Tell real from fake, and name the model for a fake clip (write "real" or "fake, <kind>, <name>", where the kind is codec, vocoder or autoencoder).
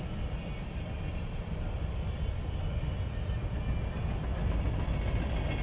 real